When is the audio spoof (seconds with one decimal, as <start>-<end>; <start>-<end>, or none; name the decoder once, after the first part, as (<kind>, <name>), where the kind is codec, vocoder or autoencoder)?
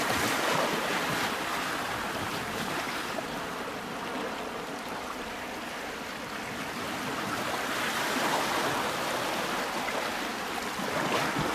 2.3-3.4 (vocoder, BigVGAN v2)